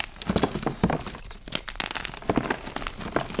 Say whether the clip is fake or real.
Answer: real